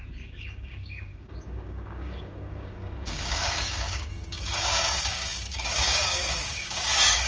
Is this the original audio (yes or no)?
no